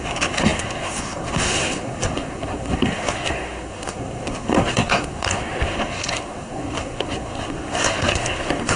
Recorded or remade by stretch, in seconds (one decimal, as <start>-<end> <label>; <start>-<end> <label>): 0.0-8.8 remade